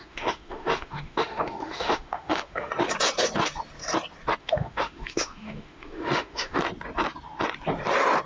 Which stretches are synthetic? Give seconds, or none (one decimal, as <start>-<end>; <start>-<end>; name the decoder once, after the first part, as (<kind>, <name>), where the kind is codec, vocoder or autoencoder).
0.0-2.7 (autoencoder, DAC-VAE); 4.4-6.6

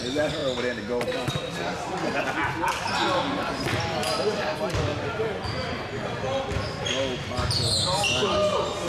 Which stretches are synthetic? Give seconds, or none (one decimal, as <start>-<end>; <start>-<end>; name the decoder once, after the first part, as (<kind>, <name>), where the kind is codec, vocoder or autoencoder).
none

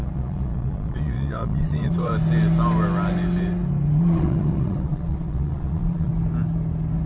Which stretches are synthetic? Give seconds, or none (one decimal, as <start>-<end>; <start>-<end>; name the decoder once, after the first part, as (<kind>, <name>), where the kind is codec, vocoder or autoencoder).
0.0-2.1 (vocoder, Vocos); 4.0-6.1

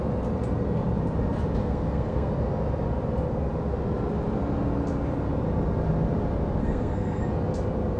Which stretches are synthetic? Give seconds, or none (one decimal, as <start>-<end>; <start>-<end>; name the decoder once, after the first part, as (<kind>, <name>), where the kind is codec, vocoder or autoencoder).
1.6-2.3 (codec, SNAC); 6.6-7.2

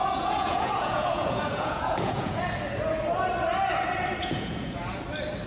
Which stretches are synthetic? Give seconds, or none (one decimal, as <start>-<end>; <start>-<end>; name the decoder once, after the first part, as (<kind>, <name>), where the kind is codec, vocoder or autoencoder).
0.0-2.4 (vocoder, Vocos); 4.2-4.8

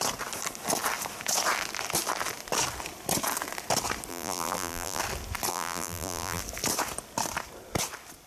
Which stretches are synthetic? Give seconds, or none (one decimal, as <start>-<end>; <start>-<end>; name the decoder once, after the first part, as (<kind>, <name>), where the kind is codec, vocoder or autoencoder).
4.1-5.0 (vocoder, BigVGAN v2); 5.5-6.4

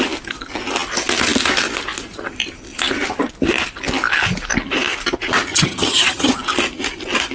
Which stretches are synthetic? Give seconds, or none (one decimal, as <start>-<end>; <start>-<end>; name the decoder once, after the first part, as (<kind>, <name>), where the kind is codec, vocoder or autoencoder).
5.5-6.3 (vocoder, HiFi-GAN)

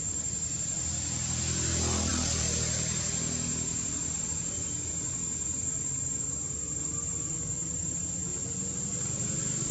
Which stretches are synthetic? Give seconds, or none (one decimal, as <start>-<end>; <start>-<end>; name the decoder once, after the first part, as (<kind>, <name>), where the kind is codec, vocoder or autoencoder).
none